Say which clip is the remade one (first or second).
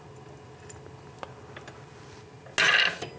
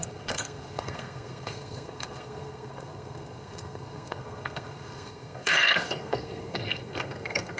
second